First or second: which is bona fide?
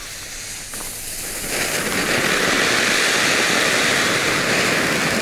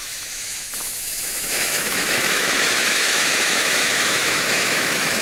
first